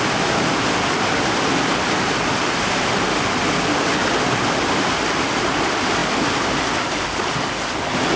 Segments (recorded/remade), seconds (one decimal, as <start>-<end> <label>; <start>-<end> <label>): 0.0-8.2 recorded